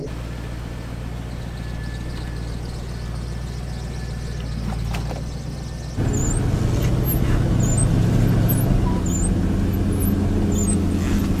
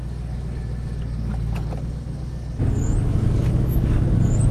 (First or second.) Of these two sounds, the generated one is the second